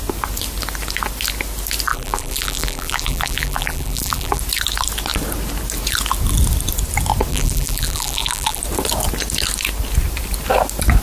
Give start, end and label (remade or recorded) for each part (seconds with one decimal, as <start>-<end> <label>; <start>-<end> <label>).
0.0-1.9 recorded; 1.9-4.4 remade; 4.4-7.3 recorded; 7.3-8.6 remade; 8.6-11.0 recorded